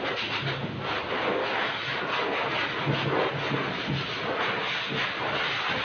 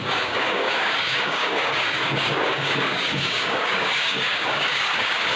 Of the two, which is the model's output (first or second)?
second